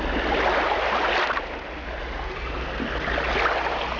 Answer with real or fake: real